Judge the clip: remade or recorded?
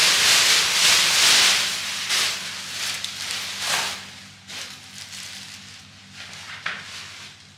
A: recorded